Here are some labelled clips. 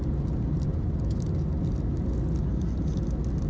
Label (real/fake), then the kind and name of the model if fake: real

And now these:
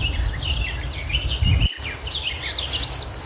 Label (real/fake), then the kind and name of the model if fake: real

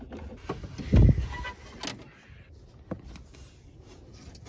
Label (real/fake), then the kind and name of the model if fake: real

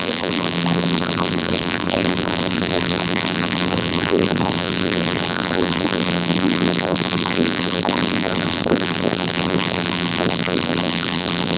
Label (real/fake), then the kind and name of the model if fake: fake, vocoder, BigVGAN v2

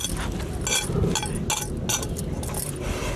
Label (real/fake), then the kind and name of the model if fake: real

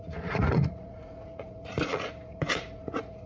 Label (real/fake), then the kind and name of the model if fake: fake, vocoder, Vocos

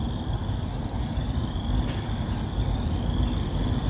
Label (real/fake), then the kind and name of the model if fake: real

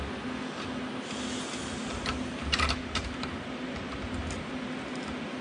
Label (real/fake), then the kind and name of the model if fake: real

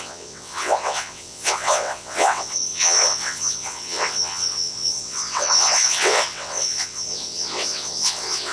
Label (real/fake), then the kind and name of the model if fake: fake, vocoder, WaveNeXt